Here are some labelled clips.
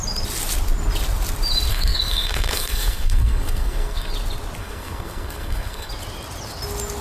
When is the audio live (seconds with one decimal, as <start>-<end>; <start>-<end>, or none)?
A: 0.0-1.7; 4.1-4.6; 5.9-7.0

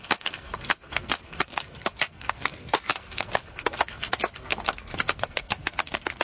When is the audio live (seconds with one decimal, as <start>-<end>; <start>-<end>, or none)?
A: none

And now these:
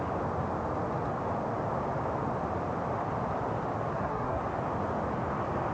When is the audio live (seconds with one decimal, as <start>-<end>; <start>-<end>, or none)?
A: 0.0-3.9; 4.4-5.7

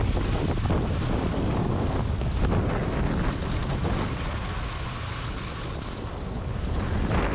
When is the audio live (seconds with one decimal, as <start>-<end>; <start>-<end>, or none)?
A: 0.0-7.3

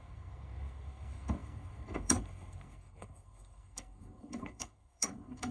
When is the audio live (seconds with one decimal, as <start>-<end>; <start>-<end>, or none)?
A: none

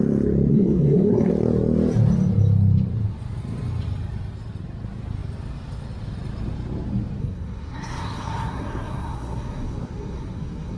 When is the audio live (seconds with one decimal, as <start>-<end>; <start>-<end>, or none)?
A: 0.0-0.5; 1.3-7.2

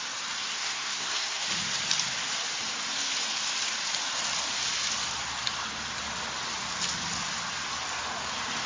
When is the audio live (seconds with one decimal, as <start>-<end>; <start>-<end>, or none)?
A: 0.0-0.6; 1.4-8.7

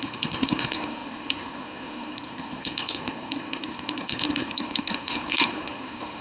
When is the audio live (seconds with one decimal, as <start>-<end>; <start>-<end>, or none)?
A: none